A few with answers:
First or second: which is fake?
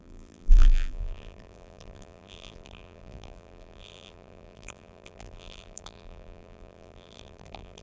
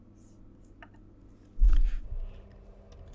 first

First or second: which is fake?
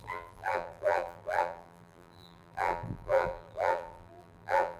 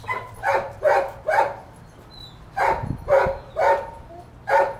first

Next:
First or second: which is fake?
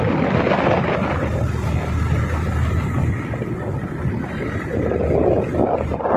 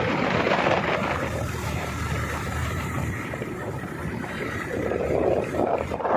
second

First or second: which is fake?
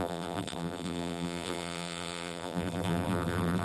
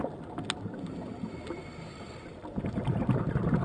first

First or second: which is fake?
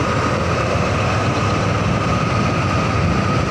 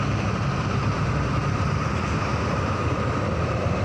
second